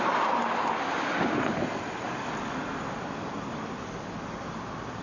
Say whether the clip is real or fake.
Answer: real